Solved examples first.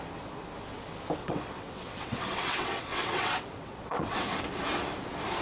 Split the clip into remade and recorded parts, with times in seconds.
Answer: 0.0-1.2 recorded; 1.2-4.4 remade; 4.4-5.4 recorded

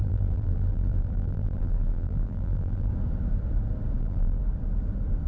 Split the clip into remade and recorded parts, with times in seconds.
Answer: 0.0-2.9 remade; 2.9-4.0 recorded; 4.0-4.4 remade; 4.4-5.3 recorded

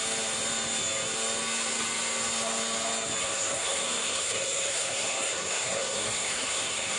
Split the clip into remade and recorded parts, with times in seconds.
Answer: 0.0-3.2 recorded; 3.2-7.0 remade

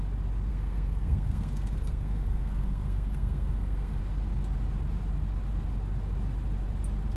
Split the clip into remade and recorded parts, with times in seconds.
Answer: 0.0-0.5 recorded; 0.5-4.0 remade; 4.0-7.2 recorded

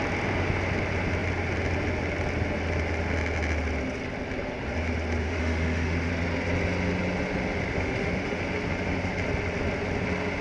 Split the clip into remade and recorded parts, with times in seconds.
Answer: 0.0-5.2 recorded; 5.2-6.1 remade; 6.1-7.7 recorded; 7.7-8.4 remade; 8.4-10.4 recorded

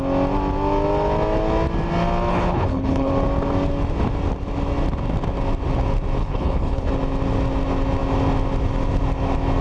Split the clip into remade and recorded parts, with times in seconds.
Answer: 0.0-2.3 recorded; 2.3-3.1 remade; 3.1-6.2 recorded; 6.2-6.9 remade; 6.9-9.6 recorded

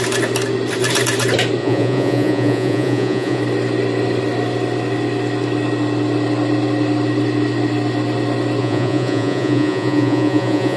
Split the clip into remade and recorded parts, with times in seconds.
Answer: 0.0-1.6 recorded; 1.6-3.4 remade; 3.4-8.6 recorded; 8.6-10.8 remade

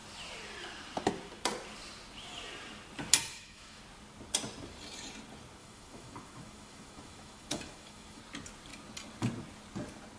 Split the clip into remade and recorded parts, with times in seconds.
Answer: 0.0-3.3 recorded; 3.3-3.8 remade; 3.8-5.6 recorded; 5.6-8.2 remade; 8.2-10.2 recorded